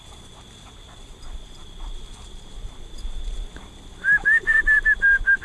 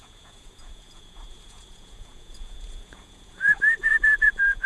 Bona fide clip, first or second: first